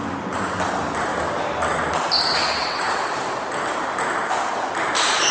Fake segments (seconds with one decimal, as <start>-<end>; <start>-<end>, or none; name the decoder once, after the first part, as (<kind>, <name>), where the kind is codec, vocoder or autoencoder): 2.6-3.1 (vocoder, WaveNeXt)